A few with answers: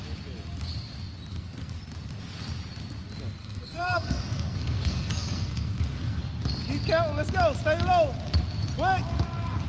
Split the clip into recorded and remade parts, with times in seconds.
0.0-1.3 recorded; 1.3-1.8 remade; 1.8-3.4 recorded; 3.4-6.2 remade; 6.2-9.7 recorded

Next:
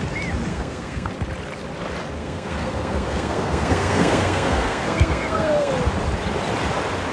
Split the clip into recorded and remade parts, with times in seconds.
0.0-0.5 recorded; 0.5-1.1 remade; 1.1-2.2 recorded; 2.2-5.7 remade; 5.7-7.1 recorded

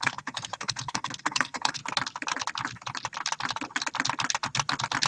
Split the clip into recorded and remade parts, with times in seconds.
0.0-1.8 remade; 1.8-5.1 recorded

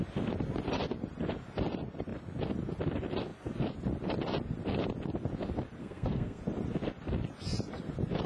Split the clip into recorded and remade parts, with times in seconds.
0.0-5.8 recorded; 5.8-6.4 remade; 6.4-8.3 recorded

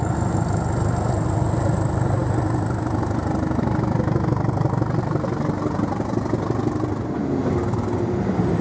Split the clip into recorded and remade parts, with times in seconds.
0.0-8.6 recorded

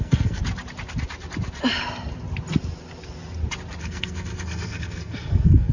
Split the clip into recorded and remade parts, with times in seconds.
0.0-0.4 remade; 0.4-3.8 recorded; 3.8-5.7 remade

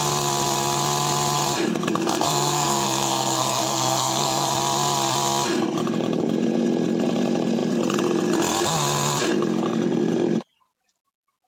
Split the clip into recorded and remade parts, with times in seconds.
0.0-1.7 recorded; 1.7-4.5 remade; 4.5-11.5 recorded

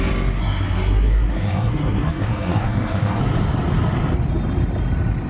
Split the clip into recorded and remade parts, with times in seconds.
0.0-0.4 recorded; 0.4-3.2 remade; 3.2-5.3 recorded